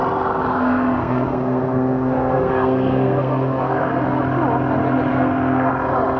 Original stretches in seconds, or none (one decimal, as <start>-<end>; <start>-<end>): 0.0-0.5; 4.2-5.1; 5.7-6.2